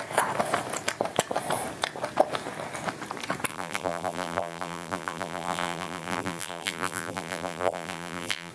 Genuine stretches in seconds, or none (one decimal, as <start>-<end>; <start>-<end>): 0.0-3.5